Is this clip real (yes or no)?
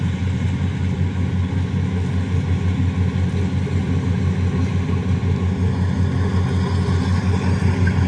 yes